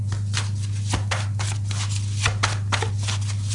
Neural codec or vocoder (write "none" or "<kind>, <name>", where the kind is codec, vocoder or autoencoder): none